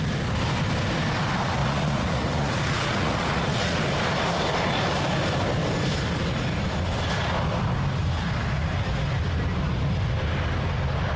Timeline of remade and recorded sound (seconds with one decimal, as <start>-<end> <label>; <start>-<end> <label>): 0.0-1.6 recorded; 1.6-3.8 remade; 3.8-11.2 recorded